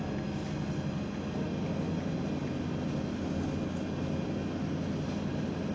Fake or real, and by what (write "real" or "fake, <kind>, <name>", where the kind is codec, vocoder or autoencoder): real